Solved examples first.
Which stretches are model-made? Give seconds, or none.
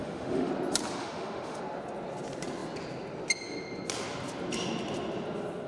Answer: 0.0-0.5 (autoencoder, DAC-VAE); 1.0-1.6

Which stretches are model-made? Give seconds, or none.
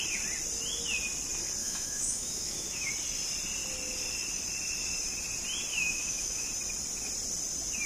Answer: 1.6-2.9 (autoencoder, DAC-VAE); 5.7-6.5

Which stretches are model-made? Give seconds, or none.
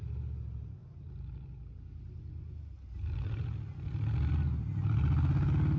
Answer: none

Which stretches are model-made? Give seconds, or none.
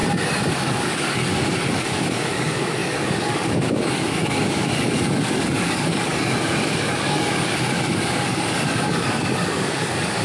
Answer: 0.5-10.2 (codec, DAC)